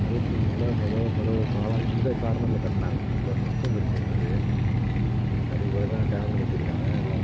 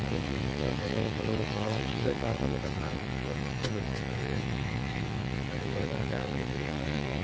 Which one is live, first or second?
first